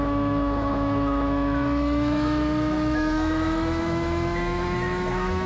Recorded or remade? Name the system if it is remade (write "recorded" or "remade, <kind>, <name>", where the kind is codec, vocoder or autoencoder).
remade, autoencoder, DAC-VAE